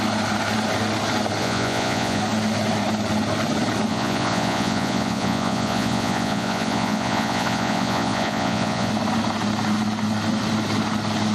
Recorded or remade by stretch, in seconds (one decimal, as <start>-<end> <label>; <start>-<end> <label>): 0.0-1.4 recorded; 1.4-2.2 remade; 2.2-3.9 recorded; 3.9-8.9 remade; 8.9-11.3 recorded